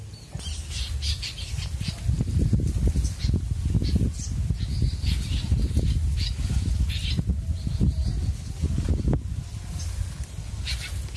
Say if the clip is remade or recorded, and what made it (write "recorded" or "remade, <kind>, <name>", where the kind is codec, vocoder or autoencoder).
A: recorded